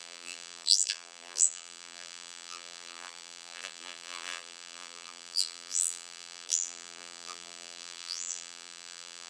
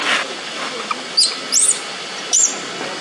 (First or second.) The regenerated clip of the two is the first